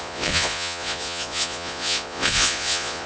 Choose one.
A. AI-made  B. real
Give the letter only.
A